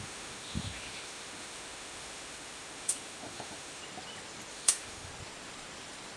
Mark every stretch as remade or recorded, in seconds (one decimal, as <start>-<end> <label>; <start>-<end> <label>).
0.0-3.8 remade; 3.8-4.5 recorded; 4.5-5.1 remade; 5.1-6.2 recorded